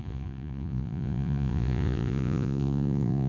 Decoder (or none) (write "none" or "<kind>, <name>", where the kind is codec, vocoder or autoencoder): vocoder, Vocos